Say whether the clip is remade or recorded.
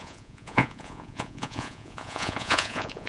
remade